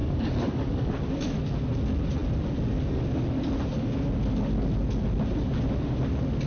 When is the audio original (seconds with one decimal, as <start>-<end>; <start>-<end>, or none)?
0.9-6.5